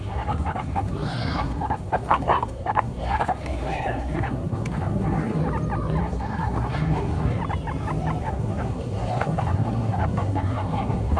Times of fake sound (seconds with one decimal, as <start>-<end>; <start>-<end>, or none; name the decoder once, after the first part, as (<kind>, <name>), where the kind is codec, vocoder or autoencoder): 0.0-5.4 (codec, SNAC); 6.0-7.4; 8.2-11.2